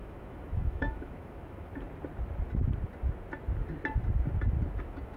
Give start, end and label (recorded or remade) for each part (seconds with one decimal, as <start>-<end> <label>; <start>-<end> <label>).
0.0-1.7 remade; 1.7-4.8 recorded; 4.8-5.2 remade